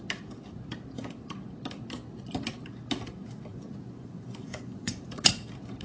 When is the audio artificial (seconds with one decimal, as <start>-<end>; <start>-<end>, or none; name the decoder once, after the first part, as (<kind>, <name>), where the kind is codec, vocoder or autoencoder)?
3.5-5.0 (vocoder, Vocos)